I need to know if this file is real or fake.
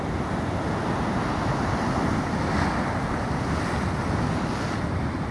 real